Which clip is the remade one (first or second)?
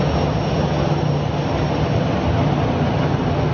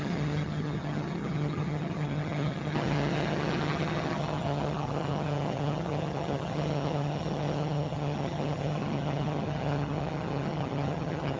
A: second